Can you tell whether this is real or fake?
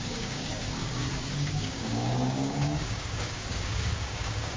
fake